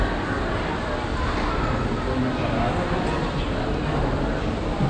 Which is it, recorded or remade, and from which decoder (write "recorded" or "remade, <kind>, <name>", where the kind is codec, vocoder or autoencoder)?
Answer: recorded